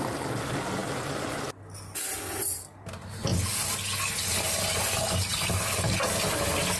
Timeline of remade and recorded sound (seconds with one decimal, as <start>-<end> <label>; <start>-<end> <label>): 0.0-6.8 recorded